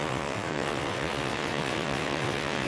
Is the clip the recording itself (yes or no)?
no